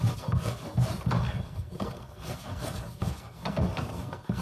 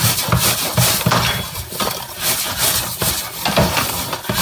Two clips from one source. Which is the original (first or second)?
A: second